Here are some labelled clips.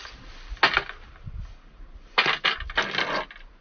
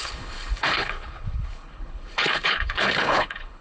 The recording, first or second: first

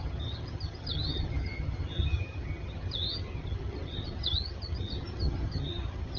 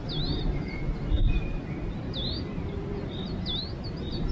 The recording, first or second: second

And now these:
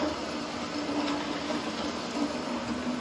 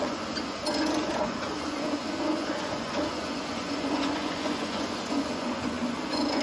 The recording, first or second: first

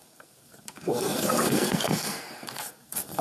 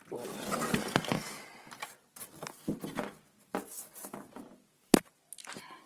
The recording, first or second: second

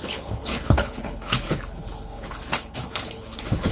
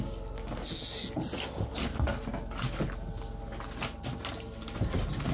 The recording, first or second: second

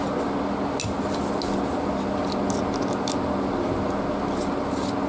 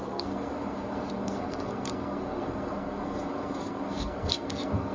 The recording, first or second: first